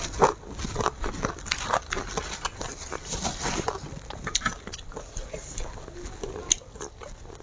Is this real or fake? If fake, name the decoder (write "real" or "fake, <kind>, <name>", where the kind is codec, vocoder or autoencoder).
real